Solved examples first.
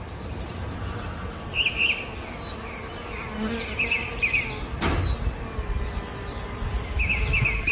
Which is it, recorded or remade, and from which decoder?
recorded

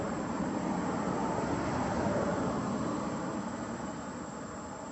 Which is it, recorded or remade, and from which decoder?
recorded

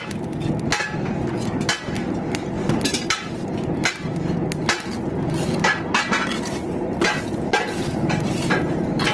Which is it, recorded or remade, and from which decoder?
recorded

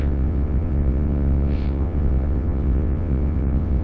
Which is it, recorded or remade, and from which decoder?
remade, vocoder, WaveNeXt